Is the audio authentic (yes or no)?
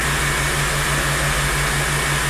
yes